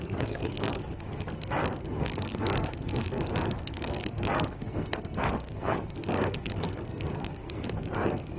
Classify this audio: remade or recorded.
remade